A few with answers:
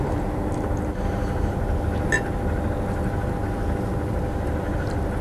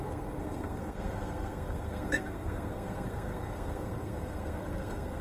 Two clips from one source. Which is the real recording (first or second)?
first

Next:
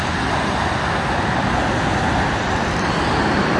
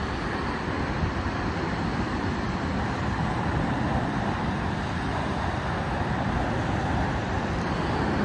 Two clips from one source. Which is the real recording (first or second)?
first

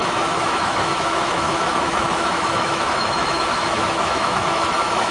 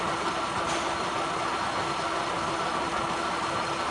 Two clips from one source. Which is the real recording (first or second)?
second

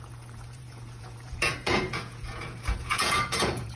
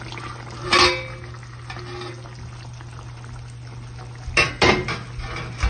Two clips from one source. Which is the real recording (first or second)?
second